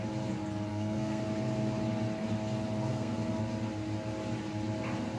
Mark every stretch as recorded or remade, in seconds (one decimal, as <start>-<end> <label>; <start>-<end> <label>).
0.0-0.7 recorded; 0.7-1.2 remade; 1.2-2.9 recorded; 2.9-3.4 remade; 3.4-5.2 recorded